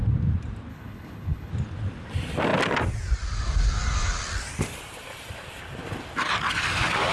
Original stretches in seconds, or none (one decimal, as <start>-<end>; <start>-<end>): 0.0-0.7; 1.5-7.1